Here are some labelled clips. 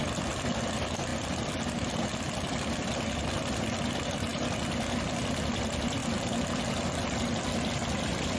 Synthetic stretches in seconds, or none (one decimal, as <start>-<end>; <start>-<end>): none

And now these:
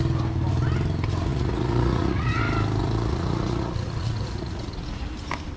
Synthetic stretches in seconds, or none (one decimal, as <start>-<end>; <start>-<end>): 1.3-2.4; 2.8-5.0

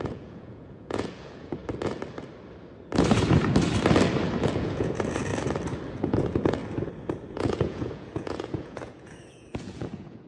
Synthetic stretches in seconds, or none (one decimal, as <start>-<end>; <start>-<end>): 0.0-1.6; 4.4-5.3; 5.9-6.6; 7.3-10.3